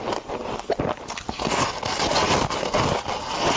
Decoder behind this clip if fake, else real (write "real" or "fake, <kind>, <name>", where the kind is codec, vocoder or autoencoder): real